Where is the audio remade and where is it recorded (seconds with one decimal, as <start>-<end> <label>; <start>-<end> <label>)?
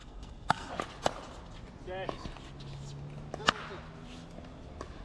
0.0-0.7 remade; 0.7-5.0 recorded